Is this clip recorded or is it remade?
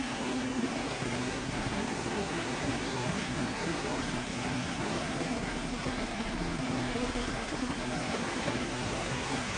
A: remade